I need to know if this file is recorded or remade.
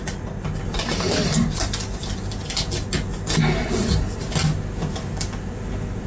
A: recorded